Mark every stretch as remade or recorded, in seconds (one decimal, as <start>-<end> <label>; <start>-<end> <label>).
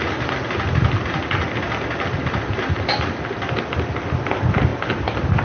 0.0-4.7 recorded; 4.7-5.4 remade